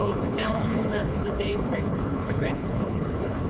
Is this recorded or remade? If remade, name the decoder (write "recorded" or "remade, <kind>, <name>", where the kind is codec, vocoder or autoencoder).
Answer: remade, codec, HILCodec